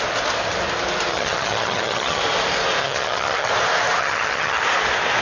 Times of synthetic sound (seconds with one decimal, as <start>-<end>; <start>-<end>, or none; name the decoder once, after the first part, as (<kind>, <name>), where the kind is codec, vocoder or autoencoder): 1.1-2.2 (vocoder, HiFi-GAN); 2.8-3.5; 4.0-4.6